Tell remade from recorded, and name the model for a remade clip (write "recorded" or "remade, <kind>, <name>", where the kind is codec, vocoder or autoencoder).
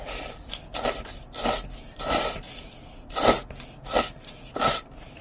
recorded